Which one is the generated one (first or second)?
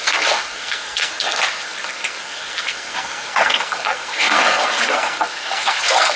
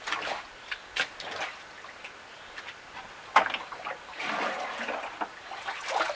first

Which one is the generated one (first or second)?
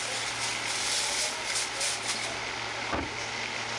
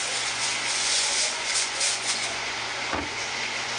second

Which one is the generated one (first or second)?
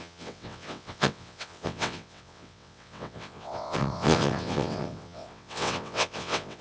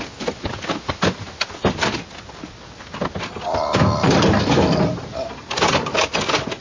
first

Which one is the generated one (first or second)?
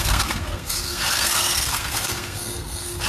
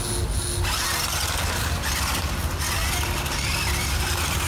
first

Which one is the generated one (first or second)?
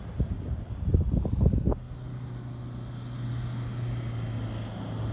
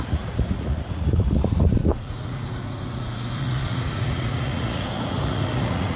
second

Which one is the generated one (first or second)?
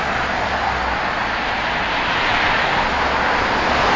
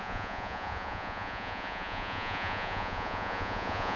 second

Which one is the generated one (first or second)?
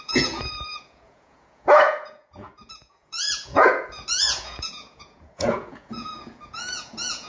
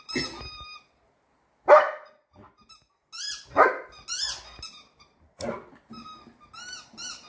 first